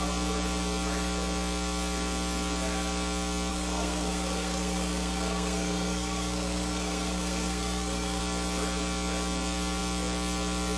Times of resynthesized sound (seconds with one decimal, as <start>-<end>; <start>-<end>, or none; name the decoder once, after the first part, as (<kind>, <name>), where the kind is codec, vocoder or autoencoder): 3.5-8.2 (codec, SNAC)